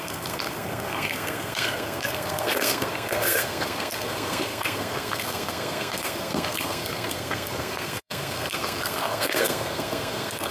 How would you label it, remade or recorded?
remade